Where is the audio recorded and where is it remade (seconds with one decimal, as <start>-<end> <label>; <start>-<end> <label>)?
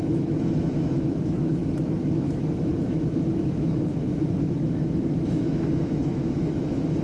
0.0-7.0 remade